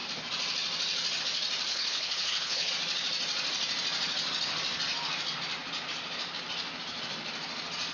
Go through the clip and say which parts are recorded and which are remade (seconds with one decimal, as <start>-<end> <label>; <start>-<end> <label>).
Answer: 0.0-1.7 recorded; 1.7-2.7 remade; 2.7-7.9 recorded

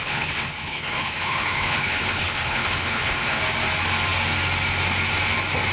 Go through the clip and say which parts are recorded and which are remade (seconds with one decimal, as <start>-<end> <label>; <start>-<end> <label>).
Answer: 0.0-3.4 remade; 3.4-5.7 recorded

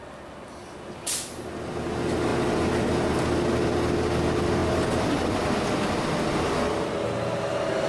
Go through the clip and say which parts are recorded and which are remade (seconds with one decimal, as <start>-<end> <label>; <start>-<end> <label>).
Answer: 0.0-7.9 recorded

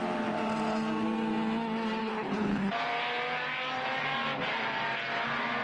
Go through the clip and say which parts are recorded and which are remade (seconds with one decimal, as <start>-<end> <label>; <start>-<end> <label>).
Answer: 0.0-2.0 recorded; 2.0-2.7 remade; 2.7-5.6 recorded